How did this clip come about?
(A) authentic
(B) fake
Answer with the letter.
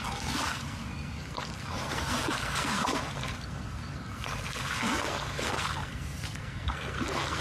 B